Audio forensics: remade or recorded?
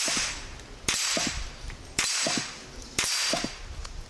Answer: recorded